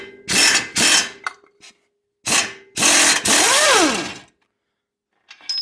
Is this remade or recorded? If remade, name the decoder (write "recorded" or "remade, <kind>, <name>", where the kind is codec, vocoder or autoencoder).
recorded